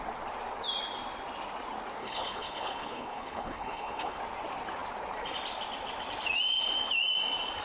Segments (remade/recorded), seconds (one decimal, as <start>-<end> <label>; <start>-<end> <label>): 0.0-2.0 recorded; 2.0-4.2 remade; 4.2-7.6 recorded